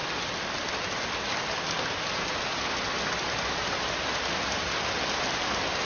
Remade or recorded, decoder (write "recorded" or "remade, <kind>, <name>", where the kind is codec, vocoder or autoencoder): recorded